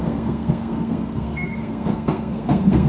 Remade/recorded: remade